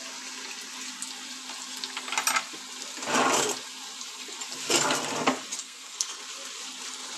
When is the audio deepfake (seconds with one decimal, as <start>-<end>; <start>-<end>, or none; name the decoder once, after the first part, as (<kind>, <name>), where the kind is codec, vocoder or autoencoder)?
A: 5.6-6.2 (codec, SNAC)